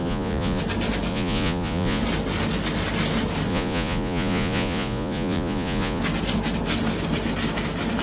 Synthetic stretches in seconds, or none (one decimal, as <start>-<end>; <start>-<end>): 0.0-0.6; 1.1-2.0; 3.5-6.0